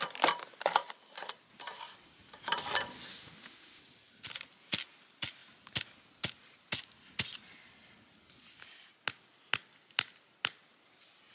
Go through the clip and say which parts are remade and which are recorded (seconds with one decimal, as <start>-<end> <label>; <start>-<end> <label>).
0.0-3.1 recorded; 3.1-3.8 remade; 3.8-11.3 recorded